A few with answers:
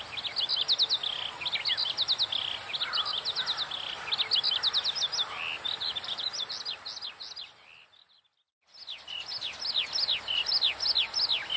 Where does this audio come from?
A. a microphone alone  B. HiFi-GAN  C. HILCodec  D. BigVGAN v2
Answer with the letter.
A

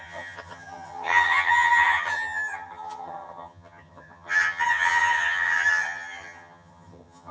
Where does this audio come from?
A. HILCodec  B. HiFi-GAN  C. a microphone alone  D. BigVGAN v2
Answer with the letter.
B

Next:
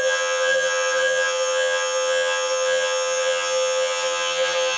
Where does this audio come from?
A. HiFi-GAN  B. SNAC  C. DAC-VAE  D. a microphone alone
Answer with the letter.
A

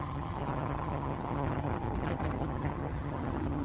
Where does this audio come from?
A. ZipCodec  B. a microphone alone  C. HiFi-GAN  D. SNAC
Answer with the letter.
C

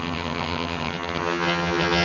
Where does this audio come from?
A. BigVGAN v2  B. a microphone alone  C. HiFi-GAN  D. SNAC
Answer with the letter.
C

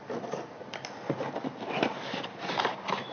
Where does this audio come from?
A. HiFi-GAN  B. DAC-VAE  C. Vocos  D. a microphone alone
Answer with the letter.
D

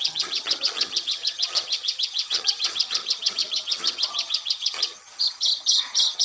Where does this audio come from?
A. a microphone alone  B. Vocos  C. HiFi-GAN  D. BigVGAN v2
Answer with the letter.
C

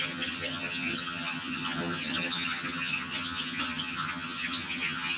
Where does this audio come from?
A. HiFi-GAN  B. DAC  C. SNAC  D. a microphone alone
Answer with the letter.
A